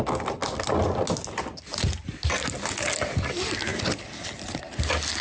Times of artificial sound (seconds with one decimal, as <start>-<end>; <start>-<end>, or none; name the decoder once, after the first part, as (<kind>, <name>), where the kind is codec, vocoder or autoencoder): none